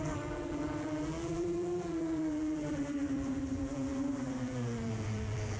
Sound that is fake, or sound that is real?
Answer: fake